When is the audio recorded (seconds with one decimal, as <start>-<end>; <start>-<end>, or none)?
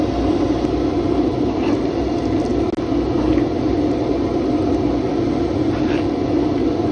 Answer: 0.0-6.9